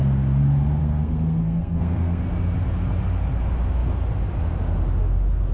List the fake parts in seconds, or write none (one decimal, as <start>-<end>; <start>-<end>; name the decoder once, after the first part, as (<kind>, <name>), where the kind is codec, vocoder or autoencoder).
0.8-2.2 (codec, SNAC)